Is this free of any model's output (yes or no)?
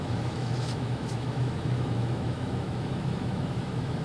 no